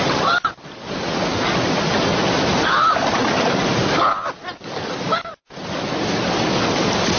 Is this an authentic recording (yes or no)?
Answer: yes